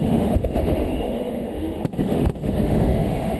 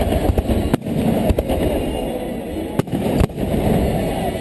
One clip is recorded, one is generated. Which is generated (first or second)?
first